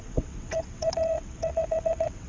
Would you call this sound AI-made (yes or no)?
yes